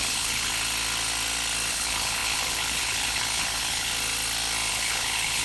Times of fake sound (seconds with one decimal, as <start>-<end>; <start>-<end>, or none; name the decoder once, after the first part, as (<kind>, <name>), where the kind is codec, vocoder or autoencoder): 0.0-0.5 (codec, HILCodec); 1.7-3.9; 4.7-5.4